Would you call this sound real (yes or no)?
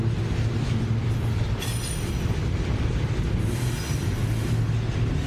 yes